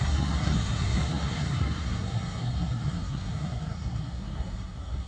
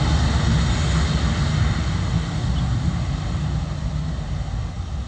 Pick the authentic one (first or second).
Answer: second